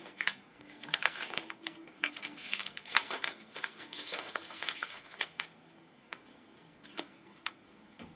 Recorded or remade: remade